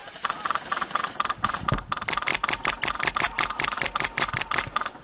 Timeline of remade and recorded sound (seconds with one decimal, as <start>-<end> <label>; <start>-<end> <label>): 0.0-5.0 recorded